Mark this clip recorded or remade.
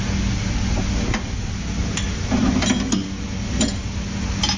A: recorded